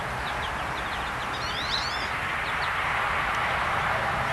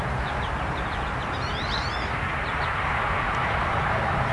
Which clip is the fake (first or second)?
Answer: second